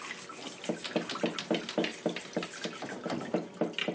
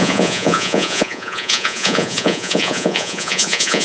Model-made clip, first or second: second